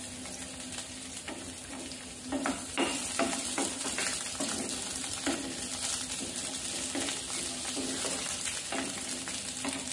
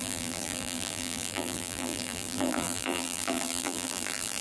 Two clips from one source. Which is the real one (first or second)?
first